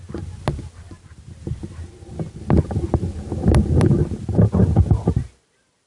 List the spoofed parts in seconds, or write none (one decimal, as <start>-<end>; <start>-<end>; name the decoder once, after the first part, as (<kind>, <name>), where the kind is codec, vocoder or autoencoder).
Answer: none